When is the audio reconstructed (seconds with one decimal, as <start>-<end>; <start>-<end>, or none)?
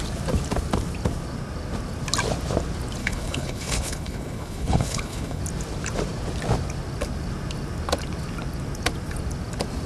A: 3.0-5.4